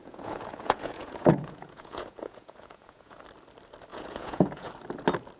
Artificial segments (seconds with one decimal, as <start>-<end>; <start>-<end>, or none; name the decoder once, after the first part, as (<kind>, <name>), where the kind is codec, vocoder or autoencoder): 0.0-3.2 (vocoder, Vocos); 3.9-4.7